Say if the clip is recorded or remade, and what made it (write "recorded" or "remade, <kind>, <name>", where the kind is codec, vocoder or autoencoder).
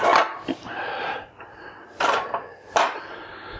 remade, vocoder, BigVGAN v2